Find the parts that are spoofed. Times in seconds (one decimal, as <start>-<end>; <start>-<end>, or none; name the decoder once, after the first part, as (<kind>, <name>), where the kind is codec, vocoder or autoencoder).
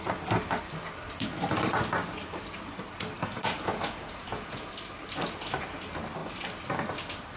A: 3.3-4.7 (vocoder, Vocos)